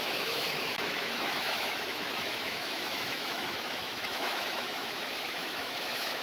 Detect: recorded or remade remade